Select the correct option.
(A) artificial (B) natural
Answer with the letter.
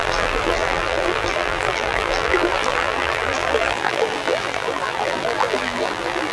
A